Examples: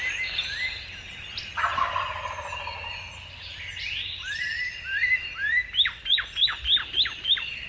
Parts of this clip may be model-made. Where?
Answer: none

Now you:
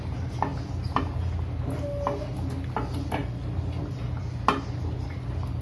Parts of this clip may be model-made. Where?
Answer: none

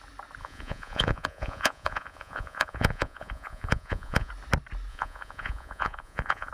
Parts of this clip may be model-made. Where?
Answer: 0.4-4.3 (vocoder, Vocos); 4.9-6.5

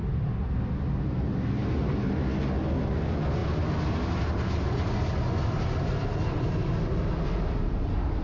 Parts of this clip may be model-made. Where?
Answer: none

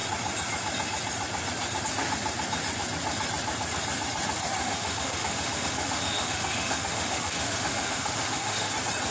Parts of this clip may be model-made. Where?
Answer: 4.6-8.7 (autoencoder, DAC-VAE)

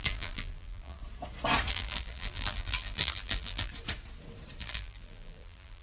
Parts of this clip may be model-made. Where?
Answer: 0.0-1.0 (vocoder, BigVGAN v2); 1.7-3.7; 4.6-5.8

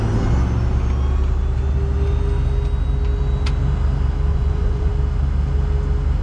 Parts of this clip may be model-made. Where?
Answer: 4.3-4.9 (vocoder, Vocos)